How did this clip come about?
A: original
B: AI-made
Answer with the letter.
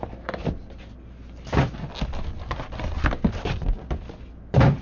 A